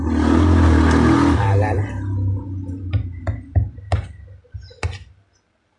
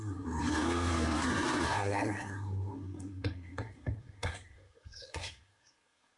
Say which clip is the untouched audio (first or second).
first